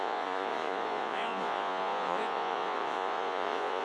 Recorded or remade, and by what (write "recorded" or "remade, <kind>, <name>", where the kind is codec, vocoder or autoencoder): remade, vocoder, Vocos